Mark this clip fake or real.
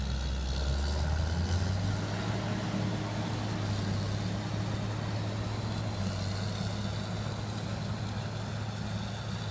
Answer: real